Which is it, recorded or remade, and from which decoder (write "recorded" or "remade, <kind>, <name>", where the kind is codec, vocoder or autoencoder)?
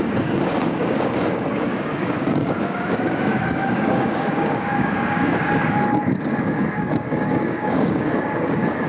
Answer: remade, codec, DAC